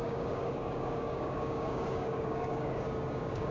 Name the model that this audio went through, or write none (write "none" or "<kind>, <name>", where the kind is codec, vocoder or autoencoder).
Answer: codec, DAC